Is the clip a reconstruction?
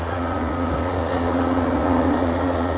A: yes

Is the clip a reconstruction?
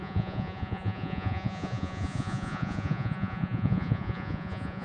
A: yes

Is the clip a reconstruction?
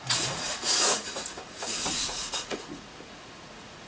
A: yes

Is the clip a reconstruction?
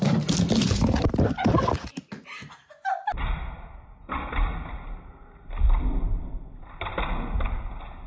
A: no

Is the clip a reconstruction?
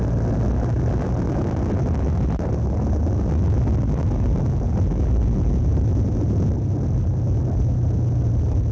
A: no